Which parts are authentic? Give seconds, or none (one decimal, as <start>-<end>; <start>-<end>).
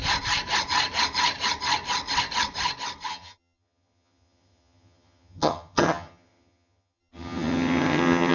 0.0-3.1